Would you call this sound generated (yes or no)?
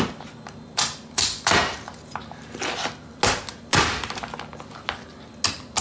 no